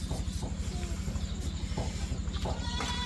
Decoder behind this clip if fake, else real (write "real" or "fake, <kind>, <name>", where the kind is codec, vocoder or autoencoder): real